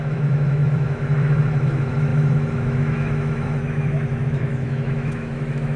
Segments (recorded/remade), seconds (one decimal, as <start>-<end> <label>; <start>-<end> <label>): 0.0-5.8 remade